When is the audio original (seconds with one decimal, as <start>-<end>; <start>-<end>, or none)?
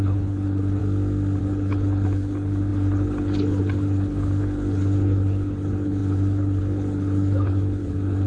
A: 0.8-1.4